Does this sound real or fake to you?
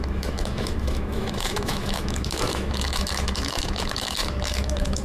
fake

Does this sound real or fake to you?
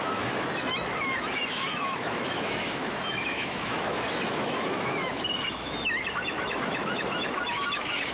fake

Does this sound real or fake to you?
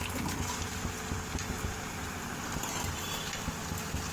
real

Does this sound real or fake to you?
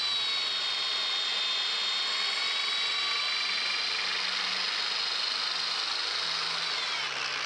real